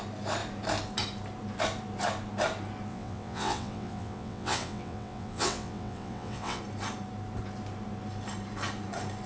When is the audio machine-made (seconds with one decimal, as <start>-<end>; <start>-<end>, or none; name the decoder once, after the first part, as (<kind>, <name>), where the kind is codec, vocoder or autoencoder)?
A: 2.9-6.6 (vocoder, WaveNeXt)